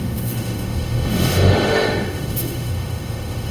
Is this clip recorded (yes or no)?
no